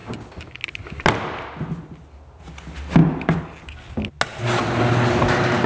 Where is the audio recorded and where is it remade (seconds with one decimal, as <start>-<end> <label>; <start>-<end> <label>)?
0.0-5.7 recorded